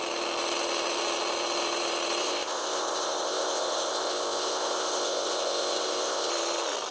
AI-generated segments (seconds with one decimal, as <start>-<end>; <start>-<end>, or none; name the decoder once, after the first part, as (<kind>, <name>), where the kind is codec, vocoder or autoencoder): 2.2-6.3 (codec, ZipCodec)